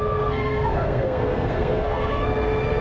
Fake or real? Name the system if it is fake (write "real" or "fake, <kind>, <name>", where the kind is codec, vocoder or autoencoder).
fake, codec, SNAC